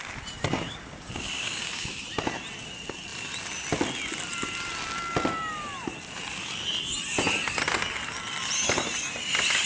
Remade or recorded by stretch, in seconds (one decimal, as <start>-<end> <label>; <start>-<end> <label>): 0.0-0.5 recorded; 0.5-2.0 remade; 2.0-9.7 recorded